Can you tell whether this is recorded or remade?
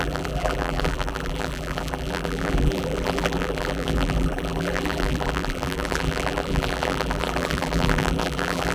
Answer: remade